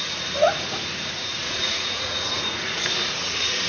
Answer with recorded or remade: remade